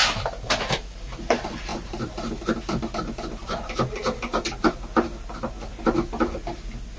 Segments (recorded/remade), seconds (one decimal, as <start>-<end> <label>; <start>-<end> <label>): 0.0-1.7 recorded; 1.7-2.4 remade; 2.4-7.0 recorded